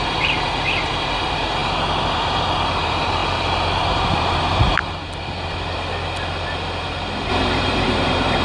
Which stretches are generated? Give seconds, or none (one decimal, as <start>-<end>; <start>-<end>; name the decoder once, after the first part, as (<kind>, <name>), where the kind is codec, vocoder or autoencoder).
0.0-1.6 (vocoder, BigVGAN v2); 2.7-3.2; 3.8-4.8; 7.3-8.4